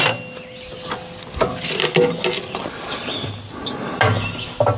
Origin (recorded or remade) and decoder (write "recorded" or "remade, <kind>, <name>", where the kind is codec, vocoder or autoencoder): recorded